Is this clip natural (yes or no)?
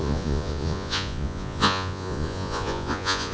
no